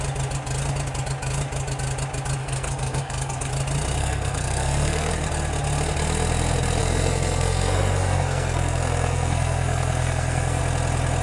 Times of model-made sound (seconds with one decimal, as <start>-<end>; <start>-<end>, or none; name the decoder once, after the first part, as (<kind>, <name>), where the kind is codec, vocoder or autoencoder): 2.4-3.5 (codec, SNAC); 4.0-5.1; 6.8-10.6